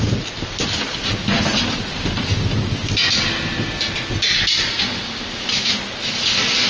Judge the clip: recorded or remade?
recorded